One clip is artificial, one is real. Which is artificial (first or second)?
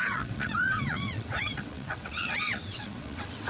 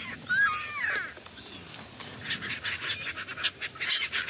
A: first